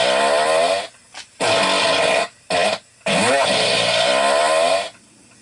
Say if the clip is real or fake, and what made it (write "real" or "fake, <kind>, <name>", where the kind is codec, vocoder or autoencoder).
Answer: real